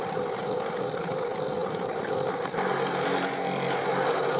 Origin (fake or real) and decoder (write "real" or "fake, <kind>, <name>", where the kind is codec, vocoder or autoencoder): real